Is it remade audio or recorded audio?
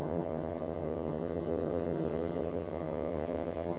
remade